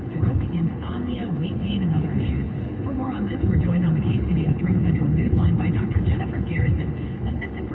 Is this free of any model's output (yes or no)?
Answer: no